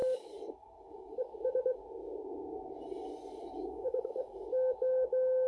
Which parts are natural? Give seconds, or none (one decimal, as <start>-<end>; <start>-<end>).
1.8-3.1